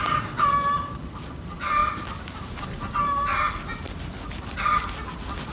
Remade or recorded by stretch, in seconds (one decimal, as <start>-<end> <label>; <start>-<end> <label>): 0.0-5.5 recorded